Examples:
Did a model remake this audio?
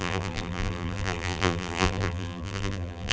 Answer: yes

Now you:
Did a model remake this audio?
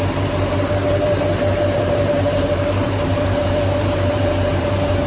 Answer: yes